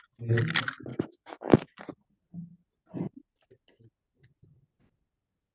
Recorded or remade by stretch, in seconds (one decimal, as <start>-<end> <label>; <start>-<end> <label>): 0.0-0.9 recorded; 0.9-1.8 remade; 1.8-5.5 recorded